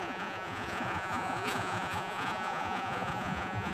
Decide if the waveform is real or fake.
fake